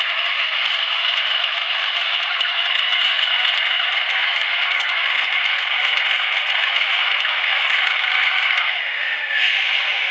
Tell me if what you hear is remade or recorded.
remade